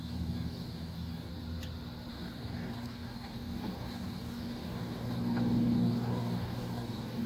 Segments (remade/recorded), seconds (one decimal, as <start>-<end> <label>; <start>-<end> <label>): 0.0-1.3 remade; 1.3-2.1 recorded; 2.1-7.3 remade